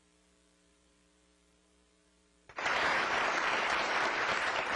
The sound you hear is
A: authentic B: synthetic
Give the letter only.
B